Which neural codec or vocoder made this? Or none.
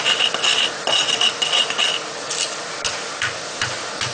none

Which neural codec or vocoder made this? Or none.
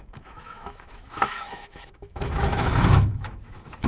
autoencoder, DAC-VAE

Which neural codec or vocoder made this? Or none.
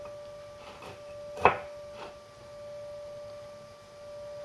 none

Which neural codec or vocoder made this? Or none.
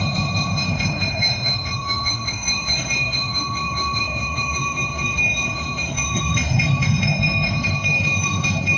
autoencoder, DAC-VAE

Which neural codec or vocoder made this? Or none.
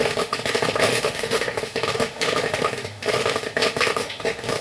autoencoder, DAC-VAE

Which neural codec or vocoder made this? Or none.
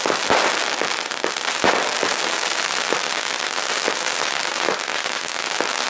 none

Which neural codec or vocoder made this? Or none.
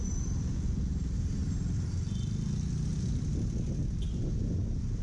none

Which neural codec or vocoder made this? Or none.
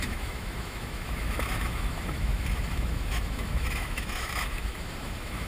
autoencoder, DAC-VAE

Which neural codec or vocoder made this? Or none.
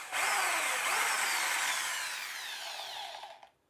none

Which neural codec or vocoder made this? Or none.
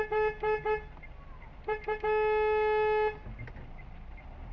none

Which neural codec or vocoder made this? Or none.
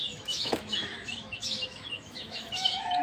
autoencoder, DAC-VAE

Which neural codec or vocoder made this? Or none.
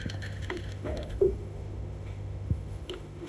autoencoder, DAC-VAE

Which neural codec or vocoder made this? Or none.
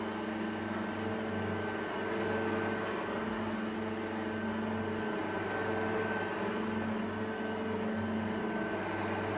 none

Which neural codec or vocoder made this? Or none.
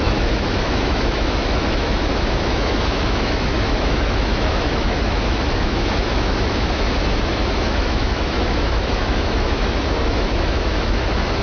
autoencoder, DAC-VAE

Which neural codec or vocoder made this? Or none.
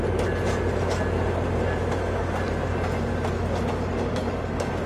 none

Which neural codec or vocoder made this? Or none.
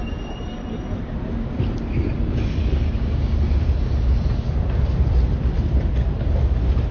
none